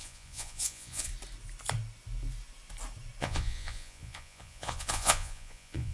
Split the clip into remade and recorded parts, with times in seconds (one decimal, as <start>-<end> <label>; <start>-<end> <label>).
0.0-1.1 remade; 1.1-3.2 recorded; 3.2-5.9 remade